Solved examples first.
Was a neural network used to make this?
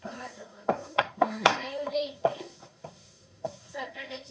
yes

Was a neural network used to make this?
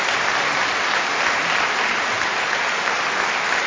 no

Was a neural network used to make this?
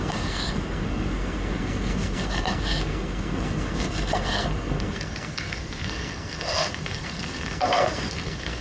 yes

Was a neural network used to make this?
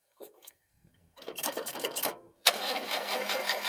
yes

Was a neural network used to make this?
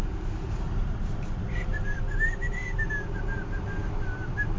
no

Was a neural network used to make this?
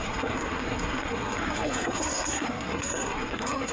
yes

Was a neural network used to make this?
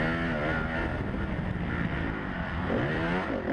no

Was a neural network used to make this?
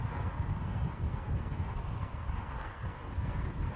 yes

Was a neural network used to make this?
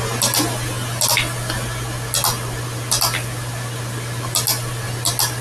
no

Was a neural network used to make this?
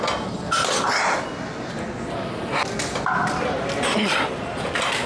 no